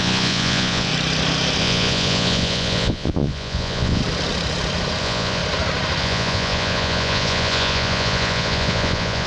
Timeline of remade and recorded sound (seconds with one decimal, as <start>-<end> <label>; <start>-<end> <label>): 0.0-0.9 remade; 0.9-1.6 recorded; 1.6-4.0 remade; 4.0-5.0 recorded; 5.0-5.4 remade; 5.4-6.0 recorded; 6.0-9.3 remade

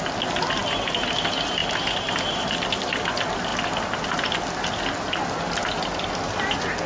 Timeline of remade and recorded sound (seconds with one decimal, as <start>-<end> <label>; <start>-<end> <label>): 0.0-6.9 recorded

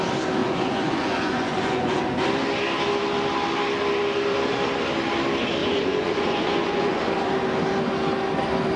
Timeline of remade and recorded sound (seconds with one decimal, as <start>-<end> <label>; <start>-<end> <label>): 0.0-0.4 recorded; 0.4-2.0 remade; 2.0-5.6 recorded; 5.6-7.0 remade; 7.0-8.8 recorded